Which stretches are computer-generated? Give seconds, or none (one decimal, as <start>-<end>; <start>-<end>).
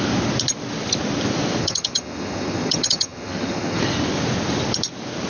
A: 1.6-3.8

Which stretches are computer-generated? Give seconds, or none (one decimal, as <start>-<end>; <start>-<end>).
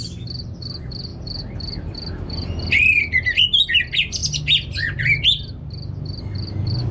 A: none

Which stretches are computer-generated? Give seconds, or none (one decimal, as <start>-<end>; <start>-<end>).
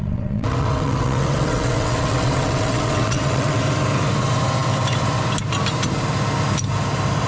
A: 0.0-3.6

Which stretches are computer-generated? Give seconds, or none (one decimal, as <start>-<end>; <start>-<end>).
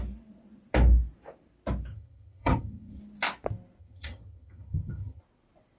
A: 1.9-3.0; 3.8-5.2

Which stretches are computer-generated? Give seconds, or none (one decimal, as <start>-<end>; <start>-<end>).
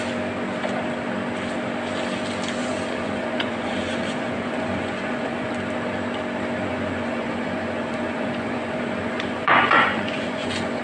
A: 2.6-5.5; 6.7-10.8